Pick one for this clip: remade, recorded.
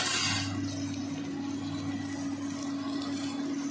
recorded